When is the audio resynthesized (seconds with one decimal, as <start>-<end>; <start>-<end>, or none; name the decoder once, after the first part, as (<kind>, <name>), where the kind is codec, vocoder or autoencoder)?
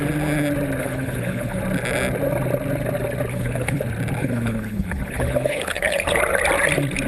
0.8-1.6 (codec, HILCodec); 3.3-3.8; 4.2-6.2